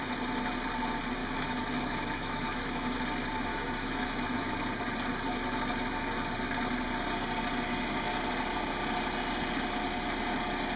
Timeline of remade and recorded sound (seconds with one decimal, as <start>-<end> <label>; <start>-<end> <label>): 0.0-1.2 recorded; 1.2-3.0 remade; 3.0-3.5 recorded; 3.5-4.5 remade; 4.5-10.8 recorded